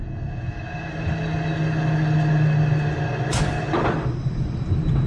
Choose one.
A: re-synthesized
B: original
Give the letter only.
B